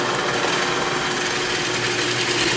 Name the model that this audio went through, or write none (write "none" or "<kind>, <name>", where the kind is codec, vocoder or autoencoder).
none